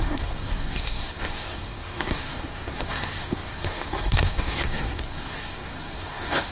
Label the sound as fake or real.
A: fake